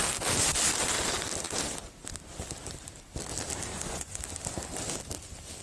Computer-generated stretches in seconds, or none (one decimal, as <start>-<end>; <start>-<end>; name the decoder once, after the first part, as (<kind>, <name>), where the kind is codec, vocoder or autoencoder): 3.7-4.2 (vocoder, Vocos)